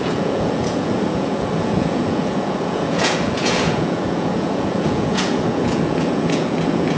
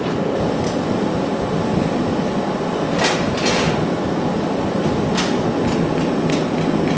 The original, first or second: second